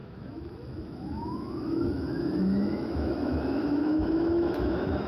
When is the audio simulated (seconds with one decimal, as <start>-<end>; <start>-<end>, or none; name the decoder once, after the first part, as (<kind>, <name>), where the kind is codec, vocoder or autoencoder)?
0.0-5.1 (autoencoder, DAC-VAE)